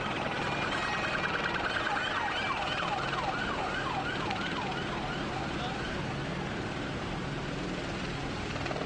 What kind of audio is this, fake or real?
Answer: real